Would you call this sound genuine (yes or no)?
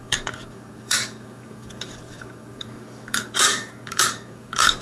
no